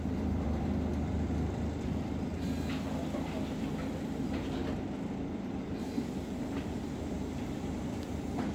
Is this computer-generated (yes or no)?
yes